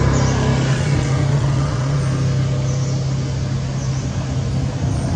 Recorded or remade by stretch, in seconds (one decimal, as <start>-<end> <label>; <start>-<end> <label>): 0.0-0.7 recorded; 0.7-2.0 remade; 2.0-5.2 recorded